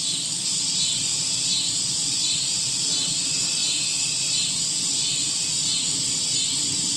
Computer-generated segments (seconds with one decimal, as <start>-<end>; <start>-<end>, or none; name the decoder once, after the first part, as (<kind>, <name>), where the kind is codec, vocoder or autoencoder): none